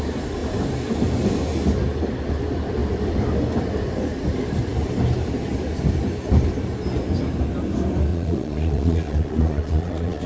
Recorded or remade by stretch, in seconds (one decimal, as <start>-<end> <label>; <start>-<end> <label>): 0.0-8.1 recorded; 8.1-10.3 remade